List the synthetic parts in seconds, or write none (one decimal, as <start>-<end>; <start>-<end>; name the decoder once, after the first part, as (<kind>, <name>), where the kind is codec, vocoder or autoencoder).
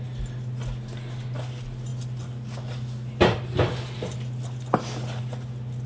none